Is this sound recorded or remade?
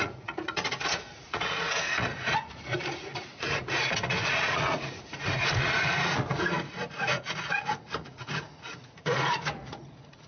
remade